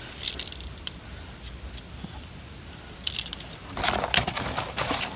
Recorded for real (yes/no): yes